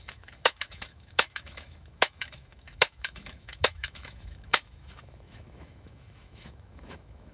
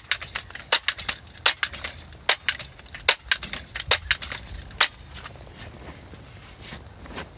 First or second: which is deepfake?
first